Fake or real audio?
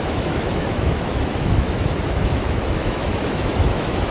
fake